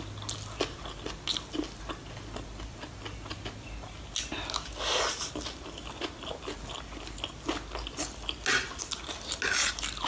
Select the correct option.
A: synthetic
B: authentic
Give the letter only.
B